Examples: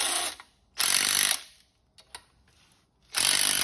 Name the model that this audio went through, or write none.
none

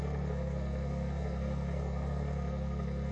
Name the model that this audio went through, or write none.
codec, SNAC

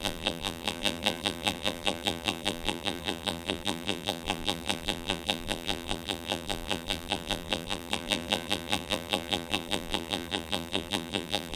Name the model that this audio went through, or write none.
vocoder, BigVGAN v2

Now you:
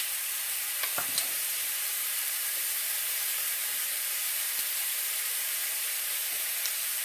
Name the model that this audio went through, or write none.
vocoder, BigVGAN v2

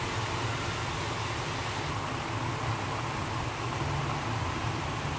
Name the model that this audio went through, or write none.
none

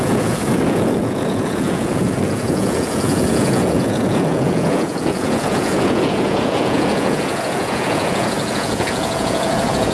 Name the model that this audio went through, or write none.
vocoder, Vocos